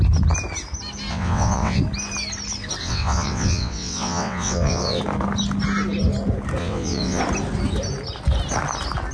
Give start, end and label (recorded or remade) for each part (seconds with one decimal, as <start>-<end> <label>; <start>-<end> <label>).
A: 0.0-1.1 recorded; 1.1-1.8 remade; 1.8-2.8 recorded; 2.8-5.0 remade; 5.0-6.6 recorded; 6.6-7.2 remade; 7.2-9.1 recorded